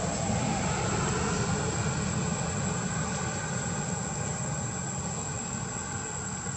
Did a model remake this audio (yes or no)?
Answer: no